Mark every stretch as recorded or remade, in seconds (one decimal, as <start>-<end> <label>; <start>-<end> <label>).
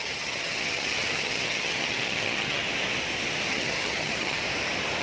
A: 0.0-2.6 remade; 2.6-3.5 recorded; 3.5-4.4 remade; 4.4-5.0 recorded